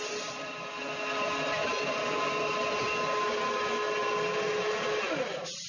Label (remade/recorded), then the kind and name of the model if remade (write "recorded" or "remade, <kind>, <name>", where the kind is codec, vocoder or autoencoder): recorded